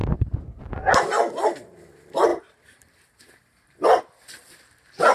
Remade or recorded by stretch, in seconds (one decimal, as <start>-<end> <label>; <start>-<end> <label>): 0.0-2.3 recorded; 2.3-4.0 remade; 4.0-5.1 recorded